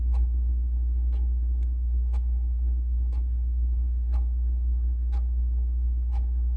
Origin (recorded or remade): remade